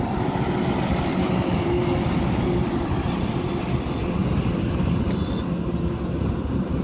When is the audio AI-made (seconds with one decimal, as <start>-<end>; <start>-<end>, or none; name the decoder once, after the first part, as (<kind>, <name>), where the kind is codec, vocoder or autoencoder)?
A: 4.2-5.4 (vocoder, BigVGAN v2)